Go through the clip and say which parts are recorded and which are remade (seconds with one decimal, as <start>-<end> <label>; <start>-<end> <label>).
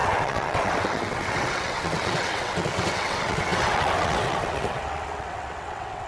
0.0-6.1 remade